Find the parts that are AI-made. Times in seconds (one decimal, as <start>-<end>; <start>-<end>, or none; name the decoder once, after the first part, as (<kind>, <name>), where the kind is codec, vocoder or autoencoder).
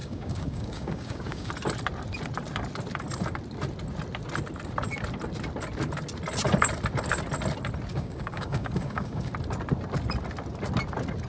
0.0-1.5 (codec, DAC); 7.9-9.3